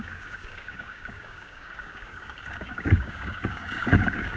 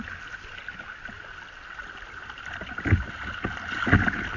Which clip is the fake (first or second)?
first